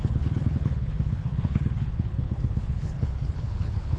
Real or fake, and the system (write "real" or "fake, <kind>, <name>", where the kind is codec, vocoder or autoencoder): fake, codec, HILCodec